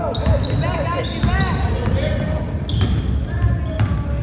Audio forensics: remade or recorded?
recorded